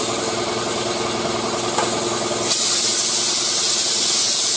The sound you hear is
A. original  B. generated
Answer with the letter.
A